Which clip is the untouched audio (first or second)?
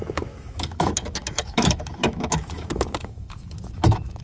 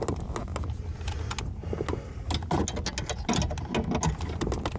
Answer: second